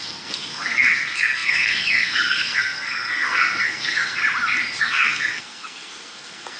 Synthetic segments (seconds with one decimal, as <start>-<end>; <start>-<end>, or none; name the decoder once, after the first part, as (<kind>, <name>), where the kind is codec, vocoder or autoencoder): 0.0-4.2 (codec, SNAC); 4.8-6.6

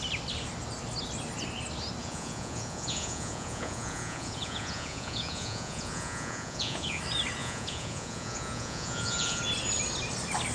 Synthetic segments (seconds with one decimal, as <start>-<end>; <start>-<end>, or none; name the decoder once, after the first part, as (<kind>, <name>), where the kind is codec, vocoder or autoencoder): 2.0-7.0 (vocoder, Vocos); 7.4-9.4

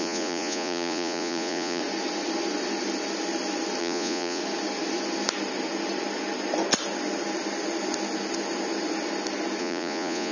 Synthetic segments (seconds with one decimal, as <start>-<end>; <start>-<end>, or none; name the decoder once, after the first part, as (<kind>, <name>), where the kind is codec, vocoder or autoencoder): 0.0-1.8 (vocoder, Vocos); 3.8-4.4; 9.6-10.3

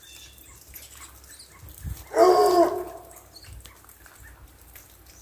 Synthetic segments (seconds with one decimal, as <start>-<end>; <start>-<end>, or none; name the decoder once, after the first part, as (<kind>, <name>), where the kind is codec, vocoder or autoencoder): none